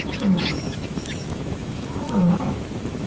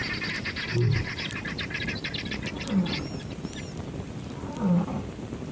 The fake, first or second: first